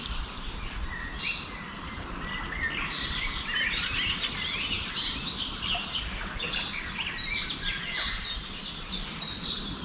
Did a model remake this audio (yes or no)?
no